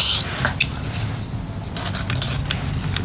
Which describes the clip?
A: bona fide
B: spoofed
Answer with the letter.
A